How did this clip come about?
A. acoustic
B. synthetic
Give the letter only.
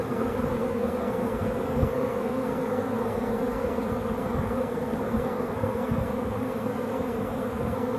B